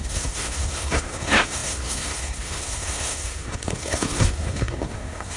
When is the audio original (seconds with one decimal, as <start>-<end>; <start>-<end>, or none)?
none